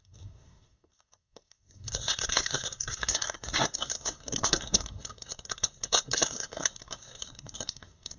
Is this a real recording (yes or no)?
no